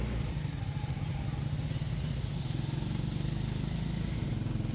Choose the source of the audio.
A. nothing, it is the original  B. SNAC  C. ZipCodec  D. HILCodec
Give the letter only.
A